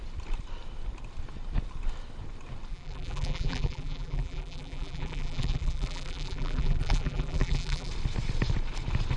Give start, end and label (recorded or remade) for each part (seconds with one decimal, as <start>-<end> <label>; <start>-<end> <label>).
0.0-2.7 recorded; 2.7-7.9 remade; 7.9-9.2 recorded